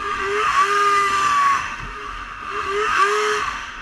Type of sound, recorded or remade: remade